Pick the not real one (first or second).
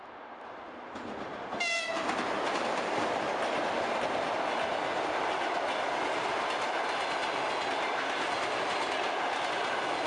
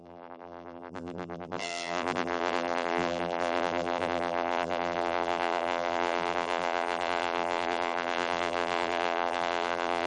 second